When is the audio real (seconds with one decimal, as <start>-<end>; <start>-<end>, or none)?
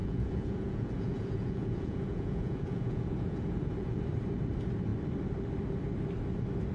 4.0-6.7